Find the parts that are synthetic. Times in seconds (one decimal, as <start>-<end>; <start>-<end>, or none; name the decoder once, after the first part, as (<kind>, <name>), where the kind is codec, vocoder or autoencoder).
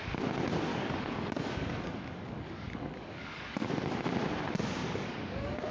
0.7-4.1 (codec, DAC); 4.8-5.7